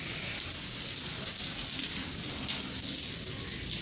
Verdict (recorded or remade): recorded